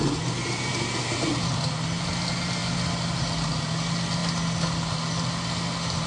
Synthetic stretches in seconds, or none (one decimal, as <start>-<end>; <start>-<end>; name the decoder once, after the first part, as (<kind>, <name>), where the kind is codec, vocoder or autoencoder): none